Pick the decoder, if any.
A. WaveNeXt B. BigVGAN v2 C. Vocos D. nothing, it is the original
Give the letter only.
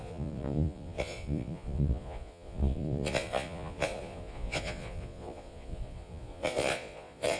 C